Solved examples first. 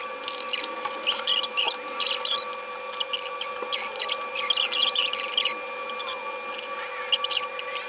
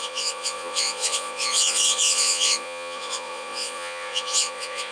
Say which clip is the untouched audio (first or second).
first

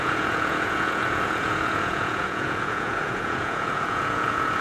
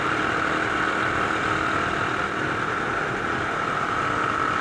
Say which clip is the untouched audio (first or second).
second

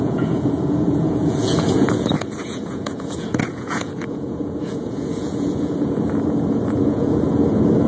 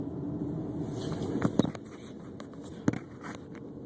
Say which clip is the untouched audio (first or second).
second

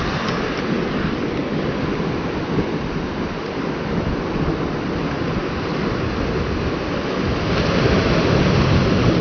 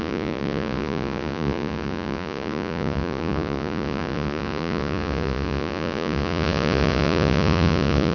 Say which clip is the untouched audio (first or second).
first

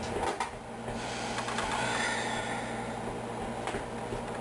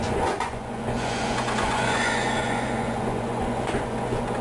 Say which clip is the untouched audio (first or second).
first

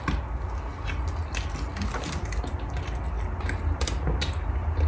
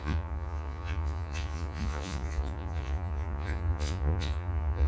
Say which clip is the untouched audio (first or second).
first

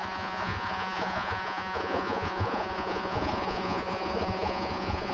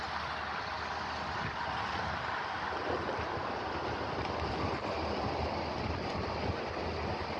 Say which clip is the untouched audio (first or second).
second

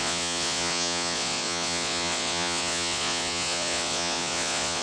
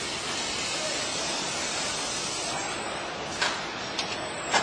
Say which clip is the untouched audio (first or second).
second